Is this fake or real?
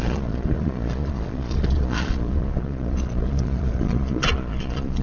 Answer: fake